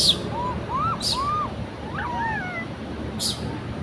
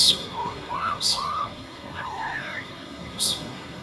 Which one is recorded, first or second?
first